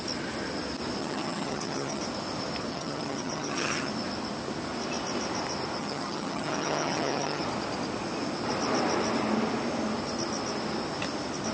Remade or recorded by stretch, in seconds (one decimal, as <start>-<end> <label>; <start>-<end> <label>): 0.0-1.0 recorded; 1.0-2.0 remade; 2.0-2.7 recorded; 2.7-3.9 remade; 3.9-5.8 recorded; 5.8-7.4 remade; 7.4-11.5 recorded